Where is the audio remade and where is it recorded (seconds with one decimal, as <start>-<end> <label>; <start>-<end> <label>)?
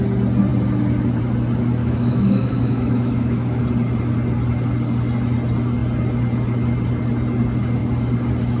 0.0-1.8 recorded; 1.8-3.6 remade; 3.6-8.6 recorded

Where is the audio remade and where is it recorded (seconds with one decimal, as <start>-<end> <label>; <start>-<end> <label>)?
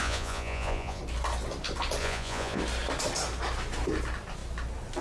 0.0-1.0 remade; 1.0-2.0 recorded; 2.0-2.6 remade; 2.6-5.0 recorded